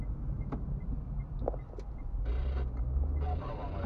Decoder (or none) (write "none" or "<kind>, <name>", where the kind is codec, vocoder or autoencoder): none